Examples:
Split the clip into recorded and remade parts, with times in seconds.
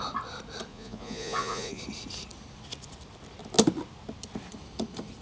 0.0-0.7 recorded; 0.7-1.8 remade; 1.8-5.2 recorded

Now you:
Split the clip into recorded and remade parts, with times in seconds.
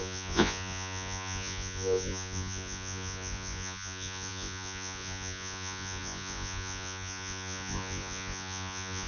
0.0-9.1 remade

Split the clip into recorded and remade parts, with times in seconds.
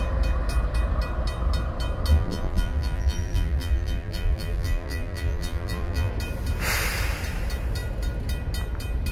0.0-2.1 recorded; 2.1-6.1 remade; 6.1-9.1 recorded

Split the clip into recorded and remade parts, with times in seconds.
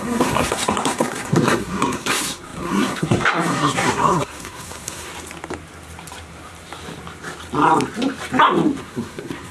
0.0-5.1 remade; 5.1-8.8 recorded; 8.8-9.5 remade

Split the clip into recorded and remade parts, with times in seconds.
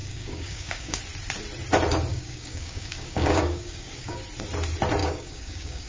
0.0-1.0 remade; 1.0-2.1 recorded; 2.1-4.2 remade; 4.2-5.0 recorded; 5.0-5.9 remade